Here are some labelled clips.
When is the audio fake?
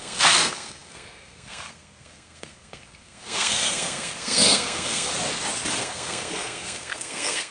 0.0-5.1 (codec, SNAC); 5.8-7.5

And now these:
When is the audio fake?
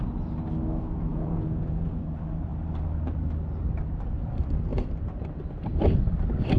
1.1-2.0 (vocoder, Vocos)